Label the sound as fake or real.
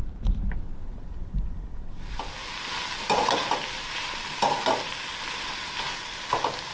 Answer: real